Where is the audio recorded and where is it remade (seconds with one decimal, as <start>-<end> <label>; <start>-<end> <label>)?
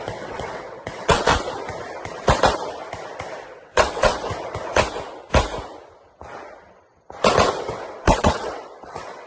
0.0-1.3 remade; 1.3-3.5 recorded; 3.5-4.1 remade; 4.1-7.6 recorded; 7.6-9.3 remade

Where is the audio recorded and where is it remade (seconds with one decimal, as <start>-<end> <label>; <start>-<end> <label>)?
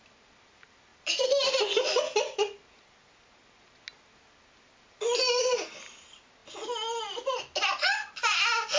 0.0-8.8 recorded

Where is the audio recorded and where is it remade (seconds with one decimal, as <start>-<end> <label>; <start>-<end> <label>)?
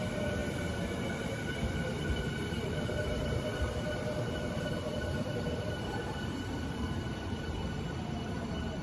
0.0-0.4 remade; 0.4-0.9 recorded; 0.9-8.8 remade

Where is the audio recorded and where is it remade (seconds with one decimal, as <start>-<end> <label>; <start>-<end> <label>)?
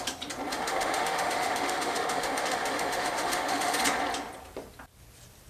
0.0-0.5 recorded; 0.5-3.8 remade; 3.8-5.5 recorded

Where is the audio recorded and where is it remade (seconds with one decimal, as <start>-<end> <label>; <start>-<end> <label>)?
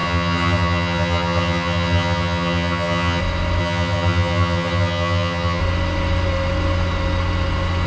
0.0-3.2 remade; 3.2-3.6 recorded; 3.6-5.6 remade; 5.6-7.9 recorded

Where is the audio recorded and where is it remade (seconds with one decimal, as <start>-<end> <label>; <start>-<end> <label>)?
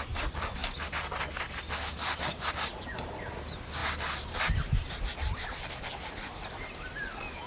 0.0-7.5 recorded